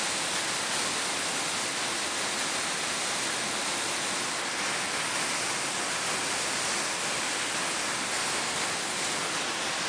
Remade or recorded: recorded